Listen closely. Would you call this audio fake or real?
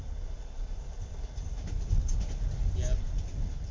real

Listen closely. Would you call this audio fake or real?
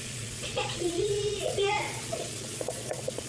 fake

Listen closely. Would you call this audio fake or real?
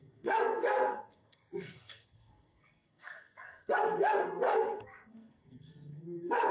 fake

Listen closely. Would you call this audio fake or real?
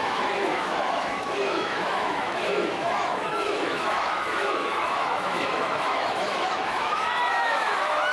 fake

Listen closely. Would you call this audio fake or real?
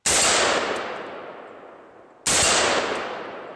real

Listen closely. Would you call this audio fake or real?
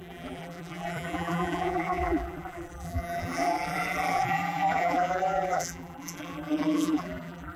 fake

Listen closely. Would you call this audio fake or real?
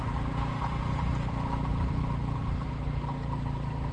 fake